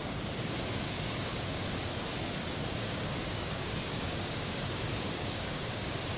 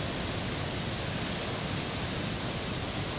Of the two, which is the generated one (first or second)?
first